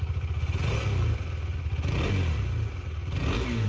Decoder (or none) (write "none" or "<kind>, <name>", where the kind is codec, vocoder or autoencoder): none